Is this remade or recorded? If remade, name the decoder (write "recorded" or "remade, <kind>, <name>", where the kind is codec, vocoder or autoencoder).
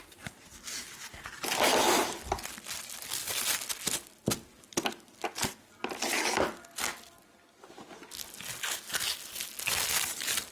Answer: recorded